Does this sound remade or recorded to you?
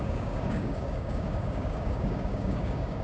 remade